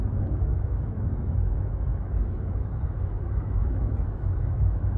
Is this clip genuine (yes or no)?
no